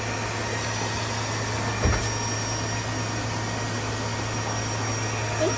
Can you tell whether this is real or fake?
real